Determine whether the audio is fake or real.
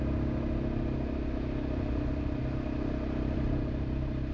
real